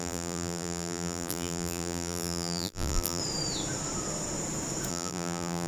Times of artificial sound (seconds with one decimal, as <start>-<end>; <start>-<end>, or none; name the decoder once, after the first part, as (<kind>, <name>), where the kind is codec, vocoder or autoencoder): 0.0-3.2 (vocoder, BigVGAN v2); 4.9-5.7